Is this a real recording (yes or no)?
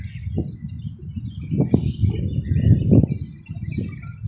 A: yes